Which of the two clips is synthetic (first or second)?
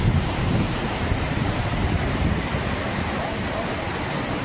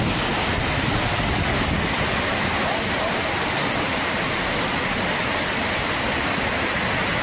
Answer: first